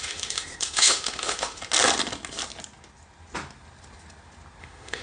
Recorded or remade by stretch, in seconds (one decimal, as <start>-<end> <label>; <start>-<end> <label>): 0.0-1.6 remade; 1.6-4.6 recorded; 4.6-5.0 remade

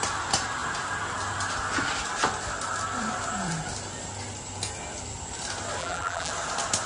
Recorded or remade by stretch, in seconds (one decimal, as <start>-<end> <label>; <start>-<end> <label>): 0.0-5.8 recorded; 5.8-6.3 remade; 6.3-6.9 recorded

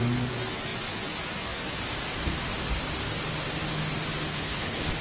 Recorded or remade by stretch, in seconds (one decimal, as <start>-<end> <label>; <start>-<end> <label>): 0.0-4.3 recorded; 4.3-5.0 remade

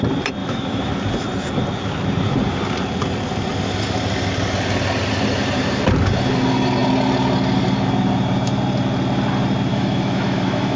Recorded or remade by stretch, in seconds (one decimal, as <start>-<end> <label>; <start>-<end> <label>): 0.0-0.4 recorded; 0.4-0.9 remade; 0.9-9.7 recorded; 9.7-10.8 remade

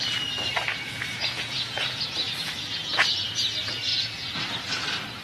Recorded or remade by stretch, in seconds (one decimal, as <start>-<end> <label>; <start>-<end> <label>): 0.0-0.7 recorded; 0.7-3.3 remade; 3.3-3.9 recorded; 3.9-4.5 remade; 4.5-5.2 recorded

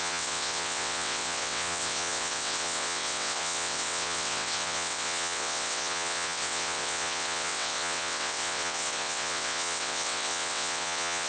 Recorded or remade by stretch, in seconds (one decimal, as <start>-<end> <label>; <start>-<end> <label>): 0.0-11.3 remade

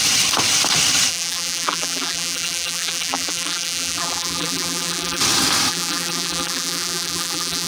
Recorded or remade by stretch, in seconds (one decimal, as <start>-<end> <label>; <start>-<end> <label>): 0.0-1.1 recorded; 1.1-5.2 remade; 5.2-5.7 recorded; 5.7-7.7 remade